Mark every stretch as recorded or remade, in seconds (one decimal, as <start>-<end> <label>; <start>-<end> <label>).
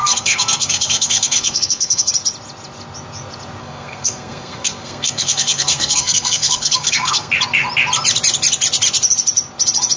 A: 0.0-2.1 remade; 2.1-3.6 recorded; 3.6-7.3 remade; 7.3-10.0 recorded